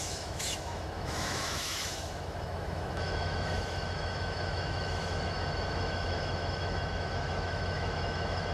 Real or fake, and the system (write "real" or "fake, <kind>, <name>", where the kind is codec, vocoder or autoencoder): fake, autoencoder, DAC-VAE